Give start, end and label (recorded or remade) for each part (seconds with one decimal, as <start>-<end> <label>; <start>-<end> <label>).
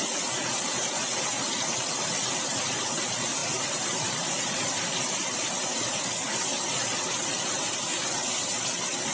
0.0-3.4 recorded; 3.4-4.6 remade; 4.6-9.1 recorded